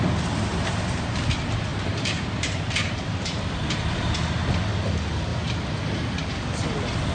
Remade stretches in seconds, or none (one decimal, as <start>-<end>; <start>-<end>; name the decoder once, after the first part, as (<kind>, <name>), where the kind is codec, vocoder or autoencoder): 0.5-1.2 (vocoder, BigVGAN v2); 1.7-3.6; 5.3-5.8